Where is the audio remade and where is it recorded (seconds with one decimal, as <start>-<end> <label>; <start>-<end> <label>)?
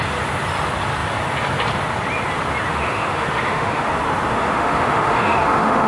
0.0-2.7 recorded; 2.7-3.9 remade; 3.9-4.3 recorded; 4.3-5.9 remade